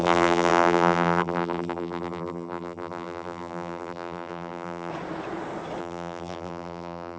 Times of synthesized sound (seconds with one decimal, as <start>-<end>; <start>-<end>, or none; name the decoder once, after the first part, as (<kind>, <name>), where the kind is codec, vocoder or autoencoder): 0.0-4.9 (vocoder, BigVGAN v2); 5.8-7.2